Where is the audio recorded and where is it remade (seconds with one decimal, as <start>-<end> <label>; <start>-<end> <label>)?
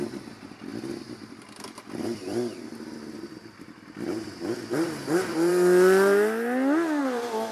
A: 0.0-0.7 remade; 0.7-1.3 recorded; 1.3-5.5 remade; 5.5-7.0 recorded; 7.0-7.5 remade